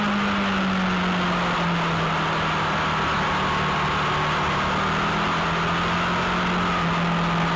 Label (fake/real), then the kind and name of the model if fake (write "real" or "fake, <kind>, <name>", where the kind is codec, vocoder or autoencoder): real